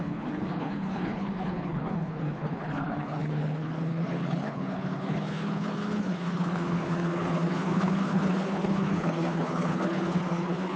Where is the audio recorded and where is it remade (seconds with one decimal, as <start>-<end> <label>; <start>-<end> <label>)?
0.0-10.8 remade